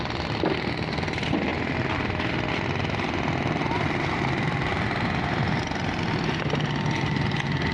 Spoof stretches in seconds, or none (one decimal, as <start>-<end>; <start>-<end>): none